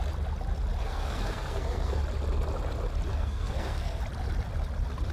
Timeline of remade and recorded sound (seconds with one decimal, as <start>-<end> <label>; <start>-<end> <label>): 0.0-0.8 recorded; 0.8-2.0 remade; 2.0-3.1 recorded; 3.1-4.0 remade; 4.0-5.1 recorded

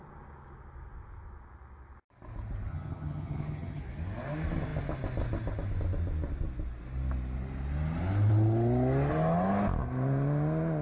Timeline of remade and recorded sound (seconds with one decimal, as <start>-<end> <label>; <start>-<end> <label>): 0.0-2.7 recorded; 2.7-3.8 remade; 3.8-10.8 recorded

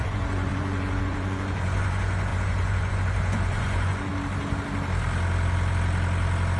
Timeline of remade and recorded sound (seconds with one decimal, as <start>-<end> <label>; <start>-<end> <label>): 0.0-4.1 remade; 4.1-6.6 recorded

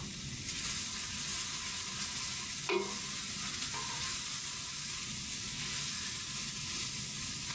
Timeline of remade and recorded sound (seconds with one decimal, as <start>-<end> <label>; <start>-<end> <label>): 0.0-7.5 recorded

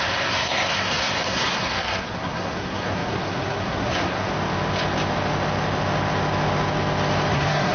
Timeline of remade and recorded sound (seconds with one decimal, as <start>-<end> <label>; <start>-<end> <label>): 0.0-4.3 remade; 4.3-7.3 recorded; 7.3-7.7 remade

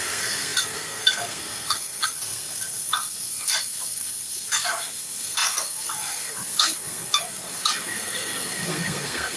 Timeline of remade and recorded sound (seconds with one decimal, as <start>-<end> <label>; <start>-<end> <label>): 0.0-9.4 remade